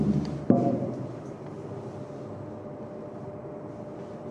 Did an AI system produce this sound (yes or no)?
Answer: no